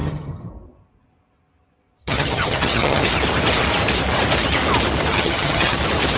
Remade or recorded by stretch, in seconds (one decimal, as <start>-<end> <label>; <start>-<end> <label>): 0.0-0.5 remade; 0.5-2.0 recorded; 2.0-3.1 remade; 3.1-5.1 recorded; 5.1-5.8 remade; 5.8-6.2 recorded